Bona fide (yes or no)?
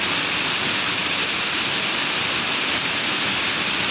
yes